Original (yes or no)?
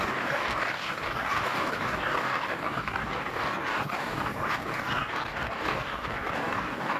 no